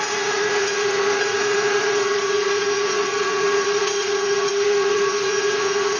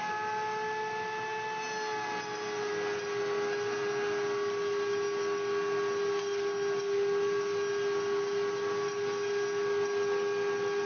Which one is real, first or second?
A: second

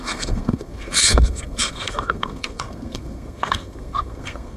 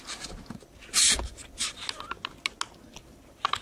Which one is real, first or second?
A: second